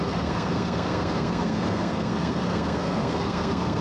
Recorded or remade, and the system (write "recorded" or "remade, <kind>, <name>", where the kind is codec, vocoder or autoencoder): remade, codec, SNAC